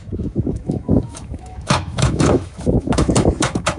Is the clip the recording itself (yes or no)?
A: no